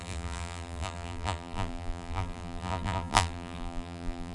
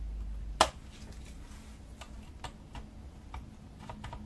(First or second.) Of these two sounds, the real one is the second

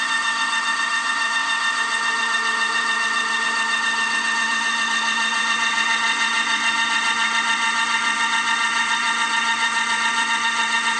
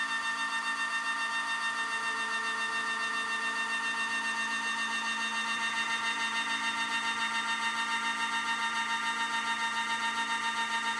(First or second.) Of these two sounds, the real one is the second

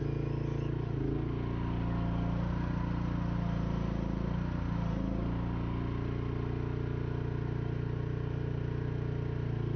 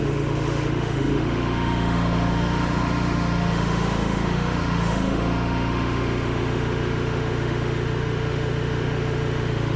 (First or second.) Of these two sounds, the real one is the first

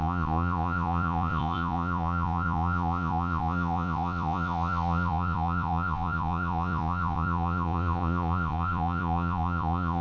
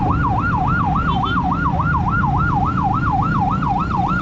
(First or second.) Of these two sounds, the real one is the second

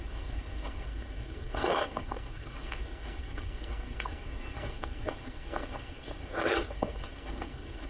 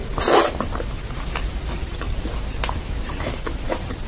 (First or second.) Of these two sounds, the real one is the second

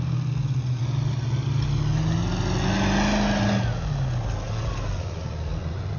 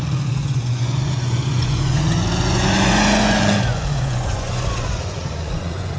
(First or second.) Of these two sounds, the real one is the first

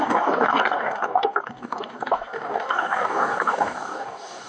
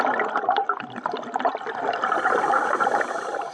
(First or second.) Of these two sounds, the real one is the second